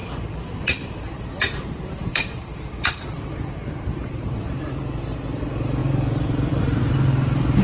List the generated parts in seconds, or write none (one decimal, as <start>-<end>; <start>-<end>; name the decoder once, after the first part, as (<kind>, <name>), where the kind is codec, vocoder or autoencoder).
0.0-1.3 (vocoder, BigVGAN v2); 2.0-4.1